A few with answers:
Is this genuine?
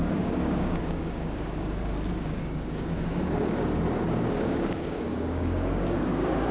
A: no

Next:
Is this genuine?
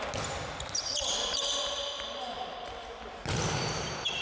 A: yes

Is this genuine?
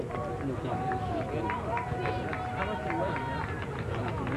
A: yes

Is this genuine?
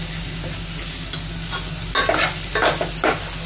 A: yes